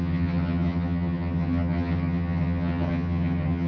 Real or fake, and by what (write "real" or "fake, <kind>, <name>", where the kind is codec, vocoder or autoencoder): fake, vocoder, HiFi-GAN